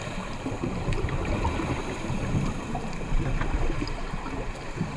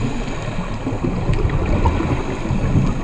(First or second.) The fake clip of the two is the first